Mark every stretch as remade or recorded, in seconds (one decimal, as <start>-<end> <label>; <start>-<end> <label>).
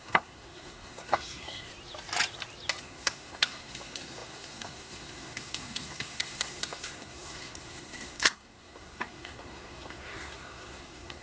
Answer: 0.0-1.7 remade; 1.7-2.8 recorded; 2.8-11.2 remade